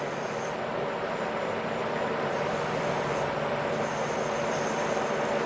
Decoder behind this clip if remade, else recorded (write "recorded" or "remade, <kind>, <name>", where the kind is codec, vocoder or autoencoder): recorded